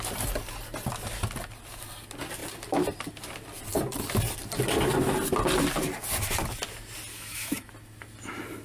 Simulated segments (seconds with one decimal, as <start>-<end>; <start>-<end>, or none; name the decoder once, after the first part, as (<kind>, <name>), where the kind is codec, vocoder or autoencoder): 7.1-7.7 (autoencoder, DAC-VAE)